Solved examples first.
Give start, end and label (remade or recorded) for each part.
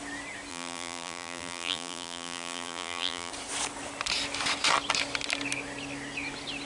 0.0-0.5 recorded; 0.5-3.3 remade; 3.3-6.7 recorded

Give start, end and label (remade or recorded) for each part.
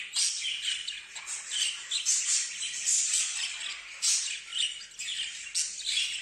0.0-6.2 recorded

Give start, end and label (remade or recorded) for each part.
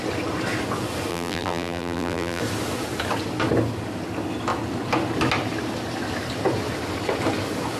0.0-1.1 recorded; 1.1-2.4 remade; 2.4-7.8 recorded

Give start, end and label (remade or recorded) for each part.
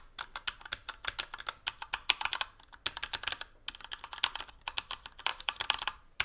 0.0-5.3 recorded; 5.3-6.2 remade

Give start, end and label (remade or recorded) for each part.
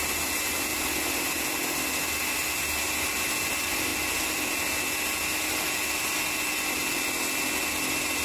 0.0-0.7 remade; 0.7-3.5 recorded; 3.5-3.9 remade; 3.9-7.7 recorded; 7.7-8.2 remade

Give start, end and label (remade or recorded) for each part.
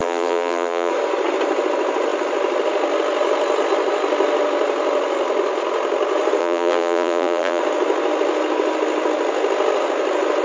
0.0-0.9 remade; 0.9-6.4 recorded; 6.4-7.6 remade; 7.6-10.4 recorded